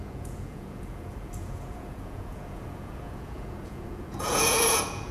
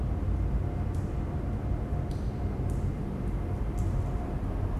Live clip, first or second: second